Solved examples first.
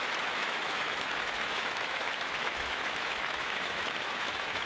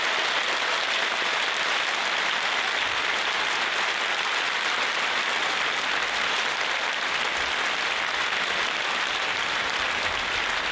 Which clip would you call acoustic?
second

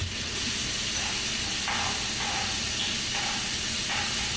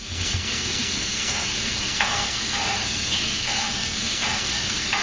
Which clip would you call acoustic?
first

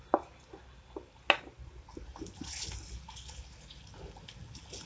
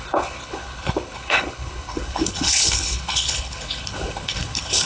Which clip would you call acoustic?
first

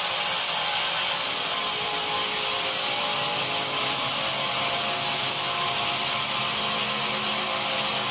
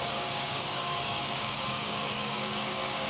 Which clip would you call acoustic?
first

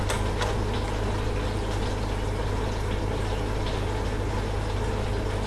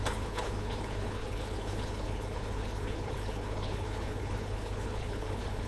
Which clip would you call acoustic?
first